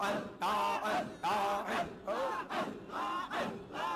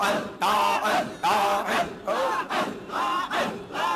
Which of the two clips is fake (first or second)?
second